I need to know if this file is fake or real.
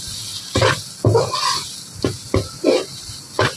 real